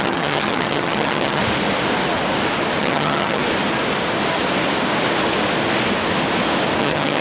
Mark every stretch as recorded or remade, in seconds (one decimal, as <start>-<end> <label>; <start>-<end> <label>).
0.0-1.4 remade; 1.4-2.8 recorded; 2.8-3.4 remade; 3.4-6.8 recorded; 6.8-7.2 remade